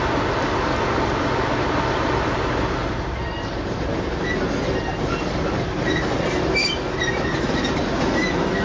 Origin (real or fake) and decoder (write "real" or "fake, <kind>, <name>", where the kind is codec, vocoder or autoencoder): real